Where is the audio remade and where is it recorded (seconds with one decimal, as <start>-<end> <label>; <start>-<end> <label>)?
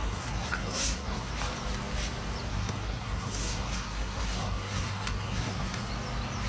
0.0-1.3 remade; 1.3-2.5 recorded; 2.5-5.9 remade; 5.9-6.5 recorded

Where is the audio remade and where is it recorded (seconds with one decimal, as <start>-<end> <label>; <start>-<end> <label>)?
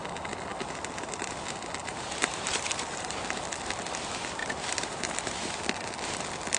0.0-1.8 recorded; 1.8-3.2 remade; 3.2-4.4 recorded; 4.4-5.6 remade; 5.6-6.6 recorded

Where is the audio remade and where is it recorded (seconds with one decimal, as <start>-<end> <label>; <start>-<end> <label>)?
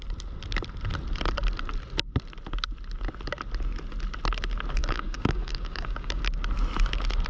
0.0-4.8 recorded; 4.8-6.2 remade; 6.2-7.3 recorded